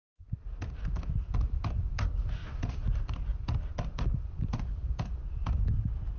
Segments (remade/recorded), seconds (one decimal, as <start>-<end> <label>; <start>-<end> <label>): 0.0-2.4 recorded; 2.4-6.2 remade

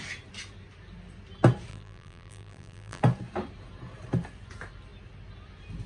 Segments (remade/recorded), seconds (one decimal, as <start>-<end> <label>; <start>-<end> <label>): 0.0-1.7 recorded; 1.7-3.0 remade; 3.0-5.9 recorded